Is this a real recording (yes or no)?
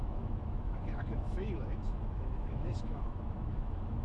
no